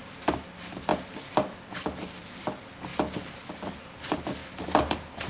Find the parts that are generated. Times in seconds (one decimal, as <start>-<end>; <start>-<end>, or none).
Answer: 0.0-0.9; 2.2-2.9; 3.7-5.3